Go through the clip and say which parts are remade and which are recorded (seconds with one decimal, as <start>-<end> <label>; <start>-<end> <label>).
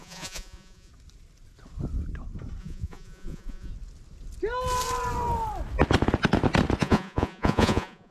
0.0-0.9 remade; 0.9-2.6 recorded; 2.6-3.7 remade; 3.7-6.8 recorded; 6.8-8.1 remade